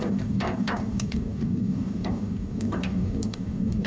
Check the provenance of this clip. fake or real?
fake